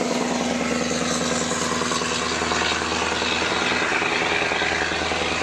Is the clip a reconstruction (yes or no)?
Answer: no